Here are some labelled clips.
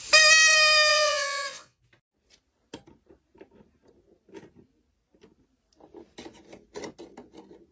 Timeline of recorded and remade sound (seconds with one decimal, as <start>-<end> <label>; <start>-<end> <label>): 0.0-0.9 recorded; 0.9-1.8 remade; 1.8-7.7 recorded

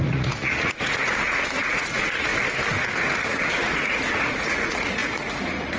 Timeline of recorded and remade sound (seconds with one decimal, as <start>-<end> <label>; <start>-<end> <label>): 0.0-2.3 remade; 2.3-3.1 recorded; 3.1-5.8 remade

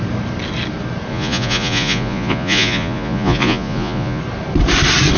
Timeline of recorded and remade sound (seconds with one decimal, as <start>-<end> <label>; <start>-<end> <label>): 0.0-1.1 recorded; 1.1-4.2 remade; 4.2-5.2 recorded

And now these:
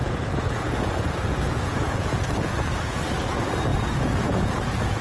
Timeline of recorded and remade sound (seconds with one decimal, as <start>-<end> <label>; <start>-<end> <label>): 0.0-3.0 remade; 3.0-3.7 recorded; 3.7-5.0 remade